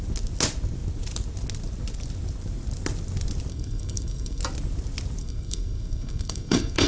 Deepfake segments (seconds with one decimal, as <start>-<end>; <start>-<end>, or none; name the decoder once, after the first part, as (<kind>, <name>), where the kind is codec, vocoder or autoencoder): 3.5-4.4 (codec, SNAC); 5.2-6.9